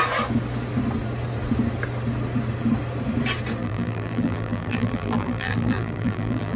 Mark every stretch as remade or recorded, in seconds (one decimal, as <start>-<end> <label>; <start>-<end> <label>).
0.0-3.6 recorded; 3.6-6.6 remade

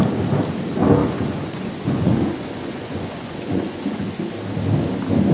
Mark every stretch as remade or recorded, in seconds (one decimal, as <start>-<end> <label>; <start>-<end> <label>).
0.0-1.0 recorded; 1.0-4.2 remade; 4.2-5.3 recorded

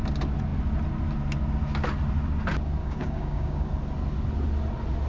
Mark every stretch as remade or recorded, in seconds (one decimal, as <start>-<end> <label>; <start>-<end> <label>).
0.0-2.8 recorded; 2.8-3.7 remade; 3.7-5.1 recorded

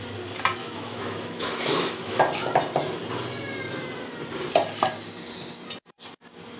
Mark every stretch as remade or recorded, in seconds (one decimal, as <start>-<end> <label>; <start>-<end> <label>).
0.0-0.6 recorded; 0.6-2.2 remade; 2.2-6.6 recorded

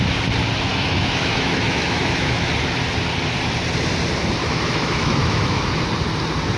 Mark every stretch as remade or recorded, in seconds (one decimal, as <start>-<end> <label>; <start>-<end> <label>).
0.0-0.7 recorded; 0.7-2.5 remade; 2.5-4.4 recorded; 4.4-5.7 remade; 5.7-6.6 recorded

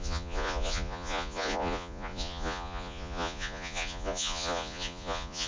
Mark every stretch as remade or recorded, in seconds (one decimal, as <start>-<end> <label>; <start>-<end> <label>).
0.0-5.5 remade

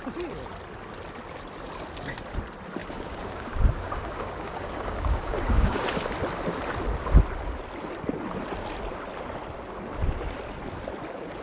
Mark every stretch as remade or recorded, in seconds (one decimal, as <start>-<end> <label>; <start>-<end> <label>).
0.0-2.8 recorded; 2.8-5.8 remade; 5.8-11.4 recorded

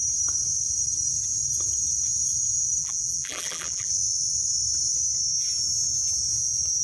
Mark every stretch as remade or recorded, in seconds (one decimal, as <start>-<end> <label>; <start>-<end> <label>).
0.0-2.8 recorded; 2.8-3.9 remade; 3.9-6.8 recorded